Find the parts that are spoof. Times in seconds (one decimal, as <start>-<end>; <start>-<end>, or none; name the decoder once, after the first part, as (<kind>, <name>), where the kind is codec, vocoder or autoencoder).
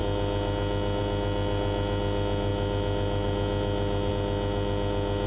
none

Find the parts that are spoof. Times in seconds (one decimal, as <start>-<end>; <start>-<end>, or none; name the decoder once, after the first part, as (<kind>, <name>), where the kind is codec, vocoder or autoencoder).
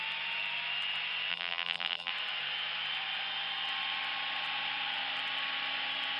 1.3-2.1 (vocoder, BigVGAN v2)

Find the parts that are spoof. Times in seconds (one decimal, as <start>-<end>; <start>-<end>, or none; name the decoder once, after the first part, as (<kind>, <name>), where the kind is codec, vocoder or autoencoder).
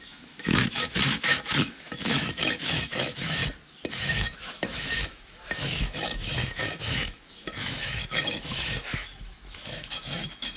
0.0-3.4 (autoencoder, DAC-VAE); 3.9-10.6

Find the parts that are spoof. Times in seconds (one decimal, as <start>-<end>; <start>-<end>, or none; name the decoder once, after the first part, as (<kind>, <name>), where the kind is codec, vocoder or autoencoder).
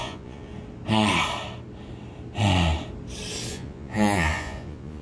0.0-0.5 (vocoder, Vocos); 3.5-5.0